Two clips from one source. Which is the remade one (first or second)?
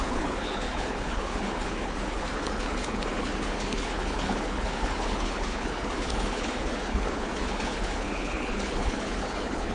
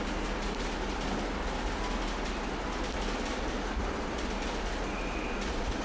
first